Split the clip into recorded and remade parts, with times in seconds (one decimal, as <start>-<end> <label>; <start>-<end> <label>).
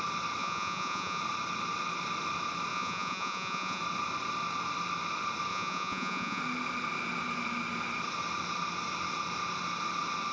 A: 0.0-0.4 recorded; 0.4-1.2 remade; 1.2-2.7 recorded; 2.7-3.8 remade; 3.8-5.5 recorded; 5.5-6.4 remade; 6.4-10.3 recorded